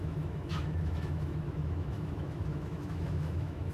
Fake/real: fake